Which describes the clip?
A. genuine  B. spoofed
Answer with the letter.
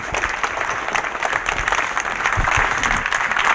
A